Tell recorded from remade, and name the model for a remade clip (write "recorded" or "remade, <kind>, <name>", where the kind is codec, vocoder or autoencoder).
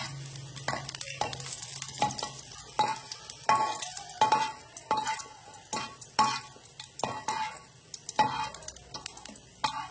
recorded